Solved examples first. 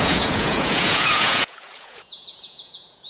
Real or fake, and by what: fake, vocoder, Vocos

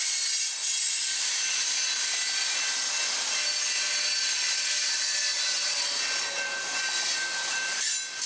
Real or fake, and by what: real